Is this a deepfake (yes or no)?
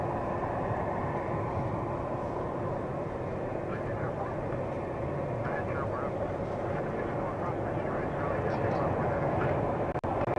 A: no